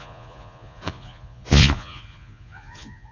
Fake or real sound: fake